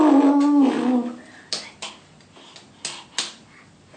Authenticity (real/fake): real